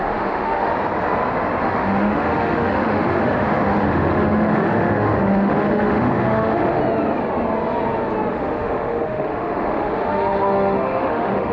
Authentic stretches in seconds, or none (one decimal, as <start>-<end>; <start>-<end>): 0.7-1.6; 6.8-8.3